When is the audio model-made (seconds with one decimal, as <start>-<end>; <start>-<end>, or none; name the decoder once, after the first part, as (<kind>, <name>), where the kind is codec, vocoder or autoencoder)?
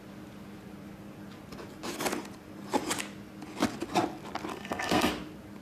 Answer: 4.5-5.1 (codec, SNAC)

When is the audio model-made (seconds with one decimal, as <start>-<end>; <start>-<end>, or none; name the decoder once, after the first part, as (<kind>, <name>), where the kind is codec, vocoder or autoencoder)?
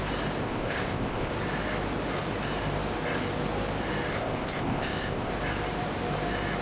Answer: 0.4-1.3 (codec, ZipCodec); 4.1-5.3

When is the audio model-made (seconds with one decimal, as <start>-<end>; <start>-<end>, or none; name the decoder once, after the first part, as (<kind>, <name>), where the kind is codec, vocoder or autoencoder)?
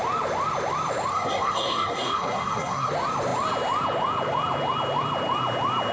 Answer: 1.1-2.9 (codec, SNAC)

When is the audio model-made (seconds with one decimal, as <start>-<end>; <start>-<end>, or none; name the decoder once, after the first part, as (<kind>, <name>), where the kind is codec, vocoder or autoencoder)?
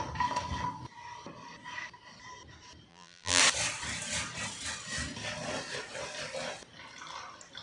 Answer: 2.9-3.4 (vocoder, BigVGAN v2)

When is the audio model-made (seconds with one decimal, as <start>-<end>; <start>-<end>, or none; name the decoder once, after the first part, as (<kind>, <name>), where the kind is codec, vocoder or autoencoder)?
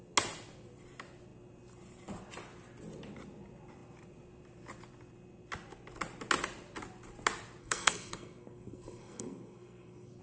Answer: 7.6-10.2 (codec, SNAC)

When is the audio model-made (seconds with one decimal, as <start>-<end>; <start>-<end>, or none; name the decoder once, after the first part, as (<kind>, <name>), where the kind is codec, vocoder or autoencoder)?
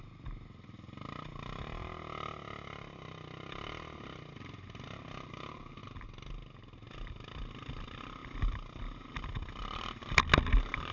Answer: none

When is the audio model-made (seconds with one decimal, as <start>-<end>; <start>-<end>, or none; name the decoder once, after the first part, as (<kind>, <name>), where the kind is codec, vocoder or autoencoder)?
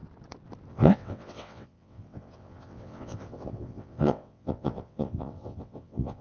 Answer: 0.7-6.2 (vocoder, WaveNeXt)